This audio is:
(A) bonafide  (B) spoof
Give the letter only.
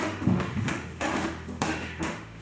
B